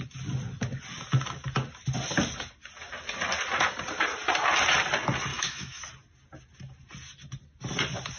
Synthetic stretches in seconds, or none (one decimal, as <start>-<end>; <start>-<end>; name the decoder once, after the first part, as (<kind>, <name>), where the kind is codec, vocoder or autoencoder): 5.3-5.8 (autoencoder, DAC-VAE)